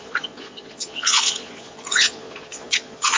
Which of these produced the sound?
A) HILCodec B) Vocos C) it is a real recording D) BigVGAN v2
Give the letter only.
B